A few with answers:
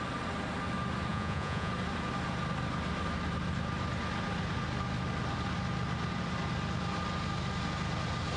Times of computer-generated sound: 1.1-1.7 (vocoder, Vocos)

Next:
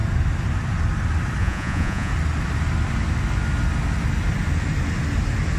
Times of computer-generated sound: 1.4-2.1 (vocoder, Vocos)

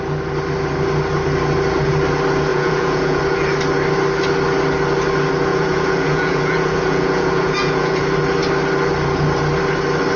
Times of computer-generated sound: 2.5-3.2 (vocoder, Vocos); 5.5-8.0

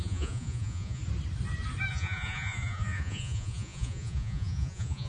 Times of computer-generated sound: 0.0-1.0 (vocoder, Vocos); 1.9-5.1

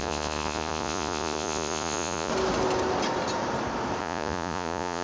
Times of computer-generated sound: 0.0-2.3 (vocoder, Vocos); 4.0-5.0

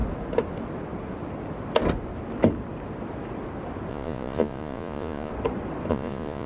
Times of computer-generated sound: 3.9-5.3 (vocoder, Vocos); 5.9-6.5